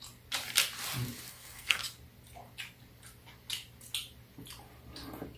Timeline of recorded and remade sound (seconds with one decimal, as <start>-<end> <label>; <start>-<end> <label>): 0.0-1.3 recorded; 1.3-1.8 remade; 1.8-5.4 recorded